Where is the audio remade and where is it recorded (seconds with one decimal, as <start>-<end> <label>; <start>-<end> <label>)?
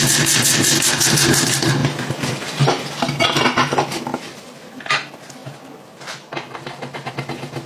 0.0-7.7 recorded